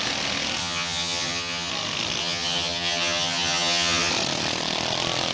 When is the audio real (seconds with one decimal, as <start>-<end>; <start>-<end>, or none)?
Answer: 0.0-0.6; 1.7-2.2; 4.1-5.3